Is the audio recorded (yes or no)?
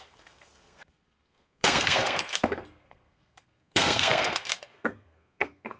no